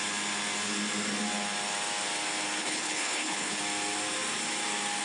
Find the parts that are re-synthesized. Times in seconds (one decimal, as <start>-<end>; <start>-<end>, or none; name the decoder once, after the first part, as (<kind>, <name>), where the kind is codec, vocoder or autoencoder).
2.6-3.6 (codec, HILCodec)